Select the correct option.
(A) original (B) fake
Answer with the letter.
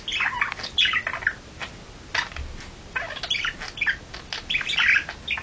A